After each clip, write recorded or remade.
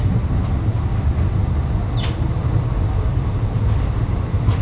recorded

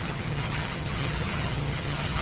remade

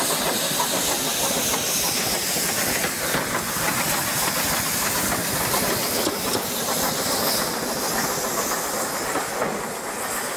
recorded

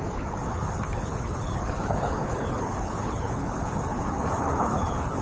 remade